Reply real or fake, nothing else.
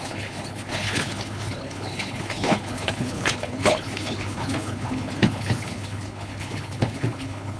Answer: fake